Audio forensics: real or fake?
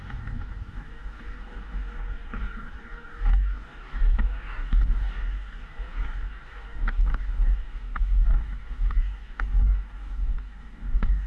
fake